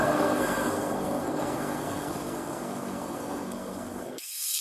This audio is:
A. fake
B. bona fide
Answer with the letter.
A